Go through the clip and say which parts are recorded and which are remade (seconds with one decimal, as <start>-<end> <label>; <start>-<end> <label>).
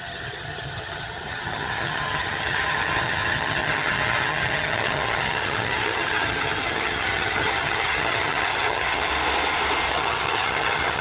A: 0.0-9.1 remade; 9.1-9.9 recorded; 9.9-11.0 remade